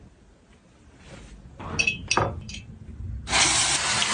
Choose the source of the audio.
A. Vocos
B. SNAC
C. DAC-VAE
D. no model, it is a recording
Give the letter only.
D